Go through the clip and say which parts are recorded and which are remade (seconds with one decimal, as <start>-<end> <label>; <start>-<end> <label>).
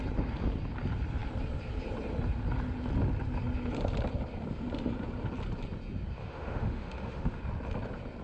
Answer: 0.0-6.2 recorded; 6.2-7.4 remade; 7.4-8.2 recorded